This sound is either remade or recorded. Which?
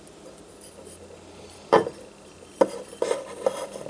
recorded